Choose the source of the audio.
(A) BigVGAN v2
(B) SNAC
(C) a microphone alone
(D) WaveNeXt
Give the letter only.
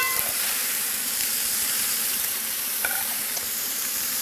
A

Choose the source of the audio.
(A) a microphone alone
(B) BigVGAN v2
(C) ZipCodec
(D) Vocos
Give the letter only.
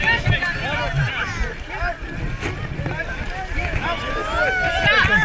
A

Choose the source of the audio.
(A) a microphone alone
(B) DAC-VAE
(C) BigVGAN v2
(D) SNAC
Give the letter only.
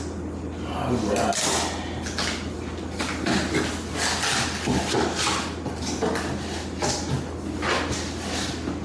A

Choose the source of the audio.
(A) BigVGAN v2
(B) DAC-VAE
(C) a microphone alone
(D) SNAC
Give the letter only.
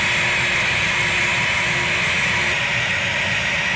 C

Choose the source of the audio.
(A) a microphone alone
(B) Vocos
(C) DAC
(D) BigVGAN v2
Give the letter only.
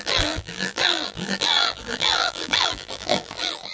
D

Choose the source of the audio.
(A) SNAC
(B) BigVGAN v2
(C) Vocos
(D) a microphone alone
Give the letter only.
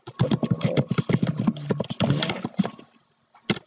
D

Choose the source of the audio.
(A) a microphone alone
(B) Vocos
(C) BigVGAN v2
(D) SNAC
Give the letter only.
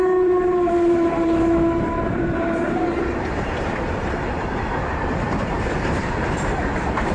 C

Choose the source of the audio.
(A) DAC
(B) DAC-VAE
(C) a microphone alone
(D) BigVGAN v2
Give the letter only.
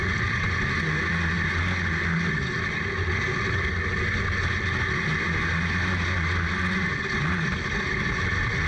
C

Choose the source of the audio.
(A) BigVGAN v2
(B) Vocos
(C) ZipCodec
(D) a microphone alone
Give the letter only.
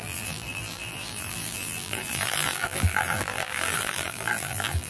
A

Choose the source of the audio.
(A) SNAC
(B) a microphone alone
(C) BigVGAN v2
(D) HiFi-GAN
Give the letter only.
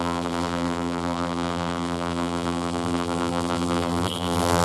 C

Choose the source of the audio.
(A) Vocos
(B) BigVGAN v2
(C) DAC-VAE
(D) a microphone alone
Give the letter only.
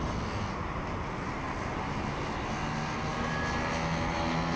D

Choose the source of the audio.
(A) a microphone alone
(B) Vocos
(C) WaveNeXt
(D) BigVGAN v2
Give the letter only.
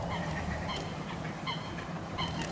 D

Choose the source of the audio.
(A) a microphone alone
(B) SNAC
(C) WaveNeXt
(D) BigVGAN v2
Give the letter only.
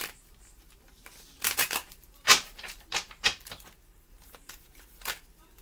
D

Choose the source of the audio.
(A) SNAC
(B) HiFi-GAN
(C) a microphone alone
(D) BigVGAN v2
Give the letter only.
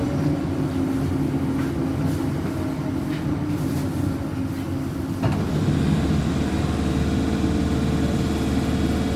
C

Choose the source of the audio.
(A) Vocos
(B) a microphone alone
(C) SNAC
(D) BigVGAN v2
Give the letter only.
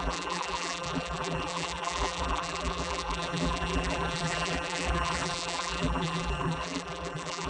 D